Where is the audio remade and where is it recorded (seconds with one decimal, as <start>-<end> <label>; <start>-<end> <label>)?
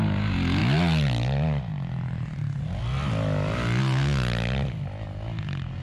0.0-5.8 recorded